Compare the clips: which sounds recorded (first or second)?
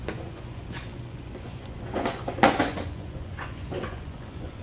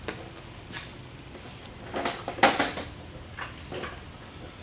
second